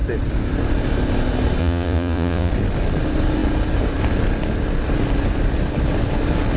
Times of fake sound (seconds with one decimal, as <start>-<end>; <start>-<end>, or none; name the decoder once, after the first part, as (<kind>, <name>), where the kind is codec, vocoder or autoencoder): 1.6-2.5 (vocoder, Vocos)